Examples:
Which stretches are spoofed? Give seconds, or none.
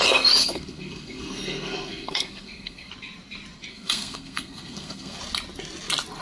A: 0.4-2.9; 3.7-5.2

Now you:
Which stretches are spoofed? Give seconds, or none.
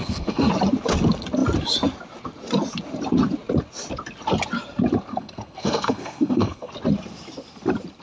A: 0.0-0.5; 5.1-6.7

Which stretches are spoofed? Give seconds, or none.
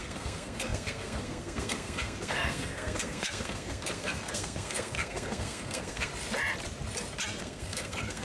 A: 0.0-6.1; 7.4-8.2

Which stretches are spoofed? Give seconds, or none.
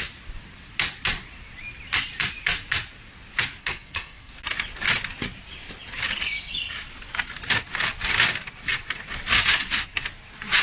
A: 3.6-4.3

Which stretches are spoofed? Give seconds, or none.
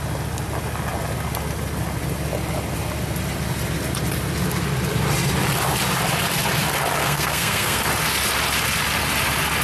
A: 7.0-7.8